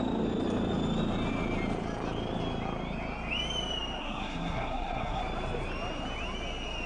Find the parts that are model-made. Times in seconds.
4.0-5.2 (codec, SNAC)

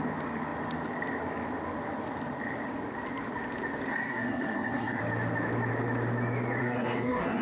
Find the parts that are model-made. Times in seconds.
3.9-5.0 (codec, SNAC); 6.6-7.4

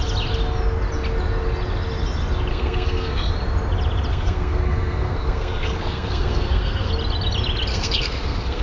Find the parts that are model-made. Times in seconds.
2.5-3.3 (codec, SNAC); 4.1-6.9; 7.7-8.6

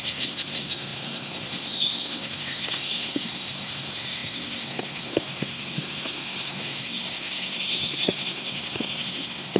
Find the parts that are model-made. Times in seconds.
0.0-9.6 (codec, SNAC)

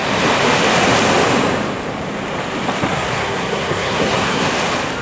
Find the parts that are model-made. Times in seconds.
2.9-4.5 (codec, SNAC)

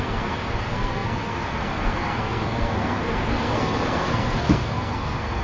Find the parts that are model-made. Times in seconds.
0.0-5.4 (codec, SNAC)

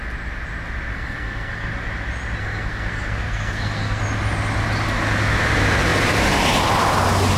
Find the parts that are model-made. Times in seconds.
0.9-1.7 (codec, SNAC); 2.4-4.0

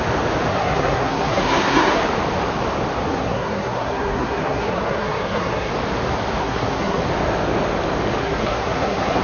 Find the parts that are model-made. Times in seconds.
0.5-2.0 (codec, SNAC); 3.1-5.7; 6.4-7.0; 8.2-9.2